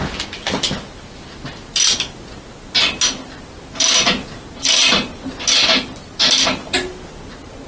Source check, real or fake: real